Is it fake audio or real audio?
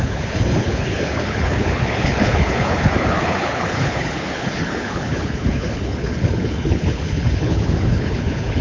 fake